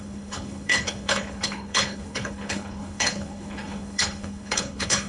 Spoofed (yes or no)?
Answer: yes